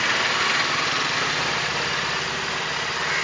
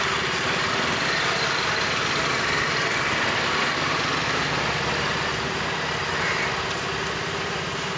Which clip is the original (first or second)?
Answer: first